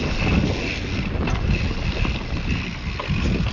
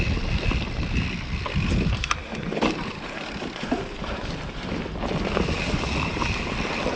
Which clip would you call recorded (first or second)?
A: first